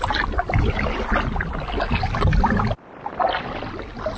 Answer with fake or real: real